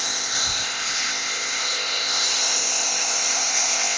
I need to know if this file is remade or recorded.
remade